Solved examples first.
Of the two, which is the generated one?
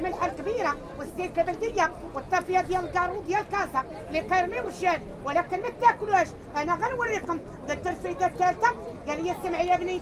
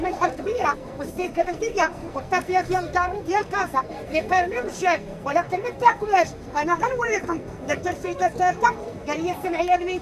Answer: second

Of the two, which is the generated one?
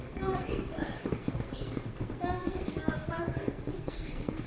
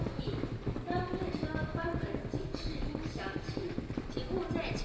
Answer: first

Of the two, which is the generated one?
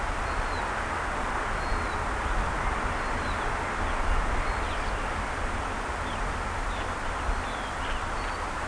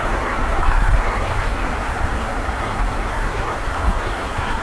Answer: second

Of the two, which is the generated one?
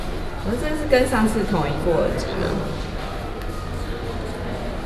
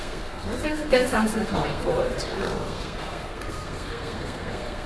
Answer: second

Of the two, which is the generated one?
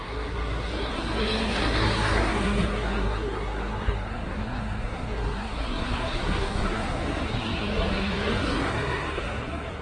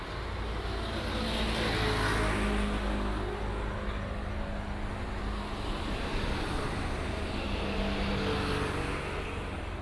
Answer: first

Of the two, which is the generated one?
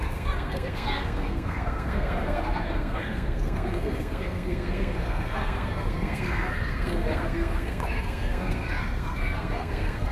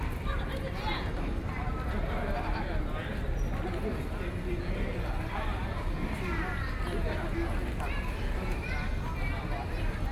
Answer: first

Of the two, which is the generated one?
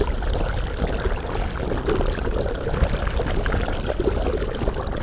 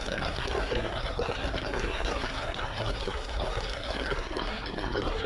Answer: second